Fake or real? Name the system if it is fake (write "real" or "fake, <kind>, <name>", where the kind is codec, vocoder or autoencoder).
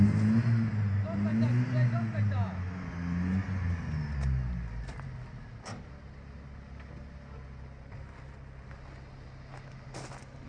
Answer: real